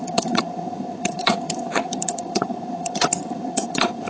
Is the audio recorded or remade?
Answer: remade